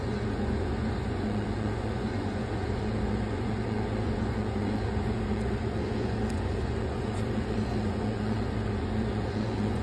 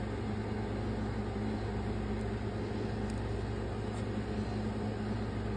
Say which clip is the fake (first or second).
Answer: first